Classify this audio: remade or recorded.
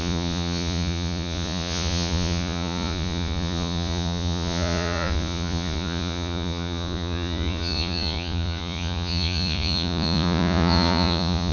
remade